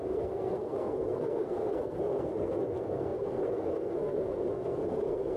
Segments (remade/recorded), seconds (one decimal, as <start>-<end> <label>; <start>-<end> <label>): 0.0-5.4 remade